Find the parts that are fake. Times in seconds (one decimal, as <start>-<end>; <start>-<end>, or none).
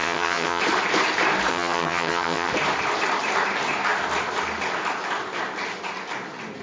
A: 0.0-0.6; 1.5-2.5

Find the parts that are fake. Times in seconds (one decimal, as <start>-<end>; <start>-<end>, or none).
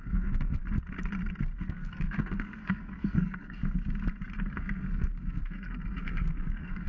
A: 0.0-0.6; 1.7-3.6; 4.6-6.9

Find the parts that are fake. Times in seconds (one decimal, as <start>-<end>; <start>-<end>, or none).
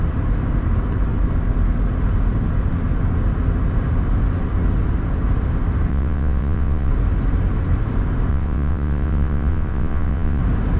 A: 5.9-6.9; 8.3-10.4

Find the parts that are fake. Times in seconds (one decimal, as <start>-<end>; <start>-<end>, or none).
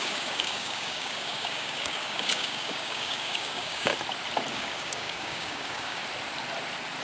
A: 0.0-3.9; 4.5-6.0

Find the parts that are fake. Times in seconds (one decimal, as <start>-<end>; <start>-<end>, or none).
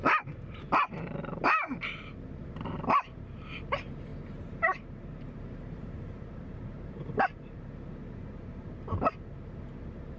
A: 4.1-7.6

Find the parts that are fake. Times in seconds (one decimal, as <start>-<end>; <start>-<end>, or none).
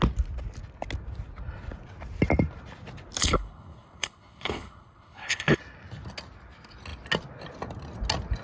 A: 3.2-5.6